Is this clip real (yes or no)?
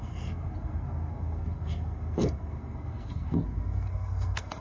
no